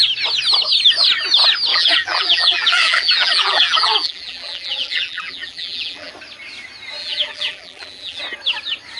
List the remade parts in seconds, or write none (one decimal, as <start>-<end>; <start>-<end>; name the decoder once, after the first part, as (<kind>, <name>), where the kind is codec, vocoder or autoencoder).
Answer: 1.7-6.1 (vocoder, BigVGAN v2); 7.0-8.2